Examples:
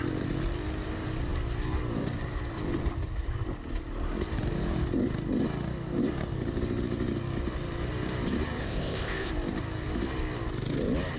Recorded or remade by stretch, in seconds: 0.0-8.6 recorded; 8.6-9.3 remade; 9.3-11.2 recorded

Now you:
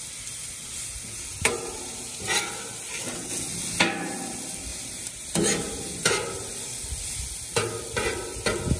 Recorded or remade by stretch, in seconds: 0.0-1.3 recorded; 1.3-2.4 remade; 2.4-4.7 recorded; 4.7-6.3 remade; 6.3-8.8 recorded

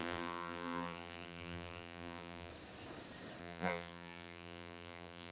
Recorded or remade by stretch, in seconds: 0.0-2.5 remade; 2.5-3.4 recorded; 3.4-5.3 remade

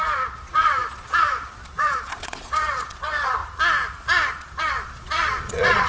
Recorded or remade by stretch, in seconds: 0.0-3.4 remade; 3.4-4.3 recorded; 4.3-5.9 remade

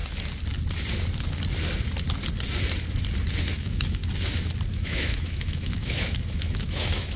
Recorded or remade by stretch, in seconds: 0.0-3.4 recorded; 3.4-4.0 remade; 4.0-4.7 recorded; 4.7-7.2 remade

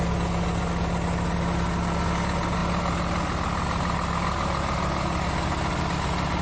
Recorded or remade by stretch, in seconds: 0.0-6.4 recorded